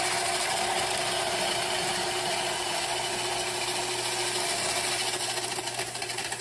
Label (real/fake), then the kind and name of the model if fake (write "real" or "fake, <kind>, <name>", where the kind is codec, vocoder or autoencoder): real